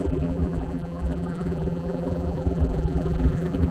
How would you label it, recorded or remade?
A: remade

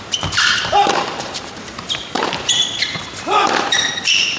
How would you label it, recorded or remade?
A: remade